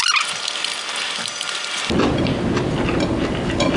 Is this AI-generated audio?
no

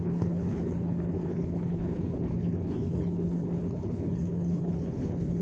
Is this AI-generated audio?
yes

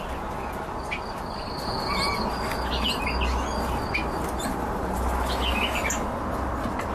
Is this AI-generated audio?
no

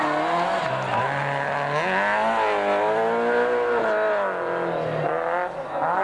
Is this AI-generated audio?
no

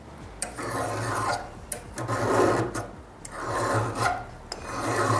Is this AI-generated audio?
no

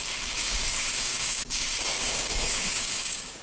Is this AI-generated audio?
yes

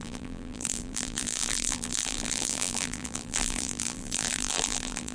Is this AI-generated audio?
yes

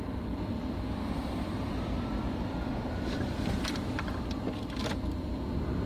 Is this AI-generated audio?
yes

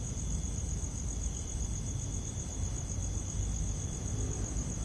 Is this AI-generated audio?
no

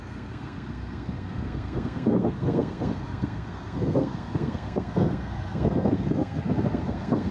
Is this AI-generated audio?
yes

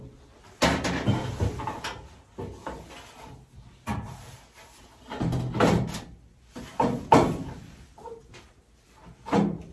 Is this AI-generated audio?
no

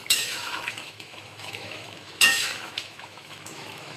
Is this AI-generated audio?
yes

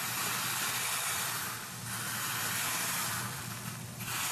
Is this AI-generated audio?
yes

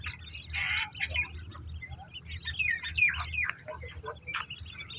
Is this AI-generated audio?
no